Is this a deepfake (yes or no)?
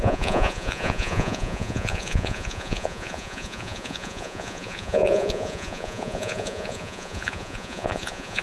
yes